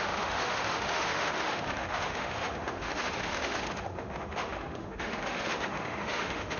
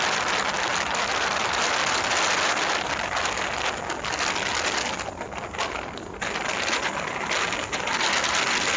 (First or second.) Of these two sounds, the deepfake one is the first